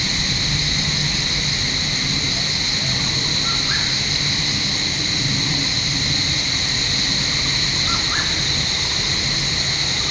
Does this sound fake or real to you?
real